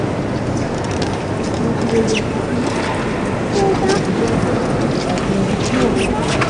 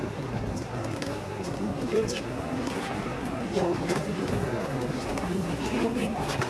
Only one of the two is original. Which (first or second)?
first